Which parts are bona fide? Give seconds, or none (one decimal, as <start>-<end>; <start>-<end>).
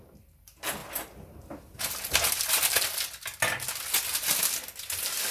0.0-5.3